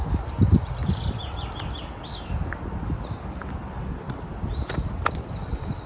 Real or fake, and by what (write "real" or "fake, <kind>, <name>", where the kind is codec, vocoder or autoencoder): real